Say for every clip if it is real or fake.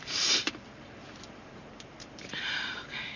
fake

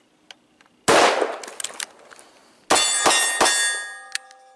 real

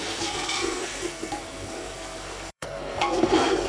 fake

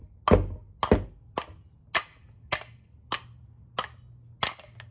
real